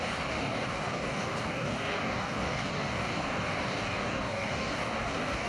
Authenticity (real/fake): fake